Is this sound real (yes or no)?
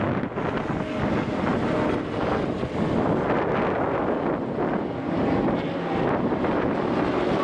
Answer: yes